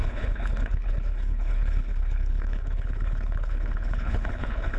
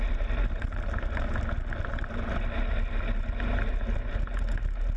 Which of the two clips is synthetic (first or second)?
first